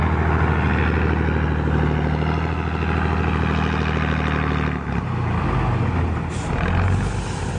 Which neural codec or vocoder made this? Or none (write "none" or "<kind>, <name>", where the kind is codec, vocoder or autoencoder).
none